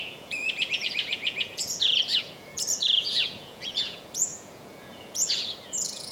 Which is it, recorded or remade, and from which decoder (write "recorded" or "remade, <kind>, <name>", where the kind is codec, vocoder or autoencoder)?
remade, vocoder, Vocos